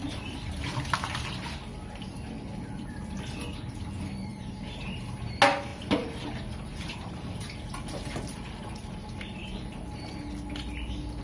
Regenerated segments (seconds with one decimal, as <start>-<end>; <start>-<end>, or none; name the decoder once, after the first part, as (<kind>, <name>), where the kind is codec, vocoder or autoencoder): 0.0-1.3 (vocoder, BigVGAN v2); 4.3-5.3; 5.7-10.2